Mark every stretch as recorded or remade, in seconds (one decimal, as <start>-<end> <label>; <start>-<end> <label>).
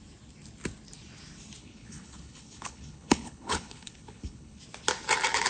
0.0-1.6 recorded; 1.6-4.6 remade; 4.6-5.5 recorded